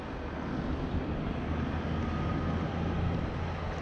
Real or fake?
real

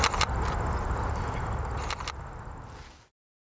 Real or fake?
real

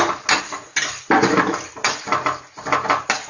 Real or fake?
real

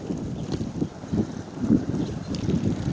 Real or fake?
fake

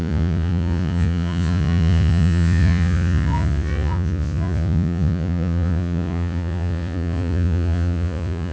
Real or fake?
fake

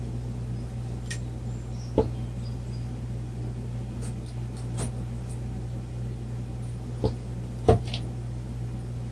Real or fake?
real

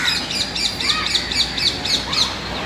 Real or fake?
real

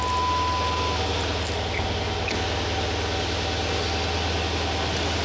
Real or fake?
real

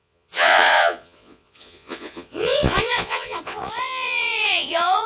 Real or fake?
fake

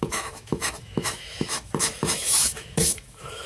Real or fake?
fake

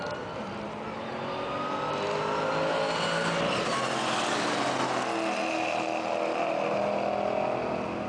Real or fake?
real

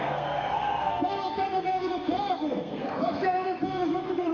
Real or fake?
fake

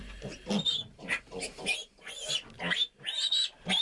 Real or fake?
real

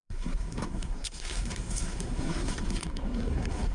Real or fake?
fake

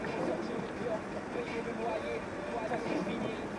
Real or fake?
real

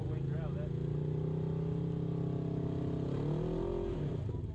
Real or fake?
real